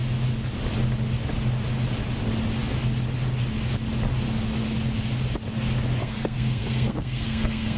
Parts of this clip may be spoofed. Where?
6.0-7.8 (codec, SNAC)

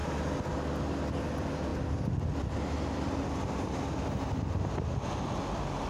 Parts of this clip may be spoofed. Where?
none

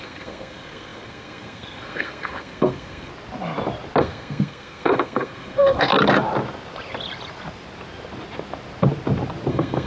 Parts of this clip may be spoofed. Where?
0.0-3.1 (codec, SNAC); 4.0-5.9; 9.5-9.9

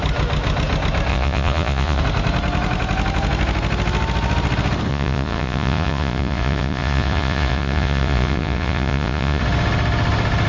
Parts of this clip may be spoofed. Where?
1.1-2.0 (vocoder, Vocos); 4.9-9.4

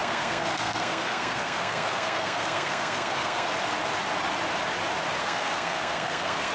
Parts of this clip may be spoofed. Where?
0.0-3.5 (codec, SNAC); 5.2-6.5

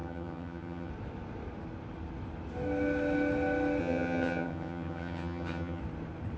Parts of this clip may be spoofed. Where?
0.0-0.9 (vocoder, HiFi-GAN); 3.8-5.8

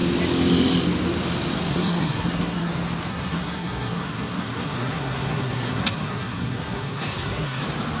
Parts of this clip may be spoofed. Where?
1.7-2.7 (codec, SNAC); 3.1-7.6